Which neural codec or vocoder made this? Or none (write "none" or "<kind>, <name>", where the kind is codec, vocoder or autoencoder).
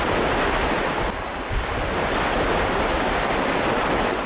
none